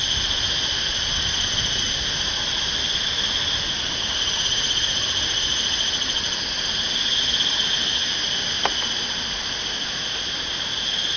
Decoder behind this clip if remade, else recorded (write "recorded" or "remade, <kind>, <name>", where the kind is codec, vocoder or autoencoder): recorded